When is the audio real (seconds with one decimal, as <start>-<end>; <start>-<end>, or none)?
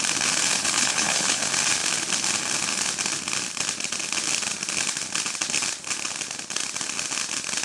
0.0-0.6; 1.4-7.6